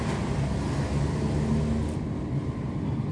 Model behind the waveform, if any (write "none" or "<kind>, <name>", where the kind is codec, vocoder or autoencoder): none